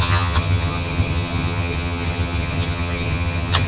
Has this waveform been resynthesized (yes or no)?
yes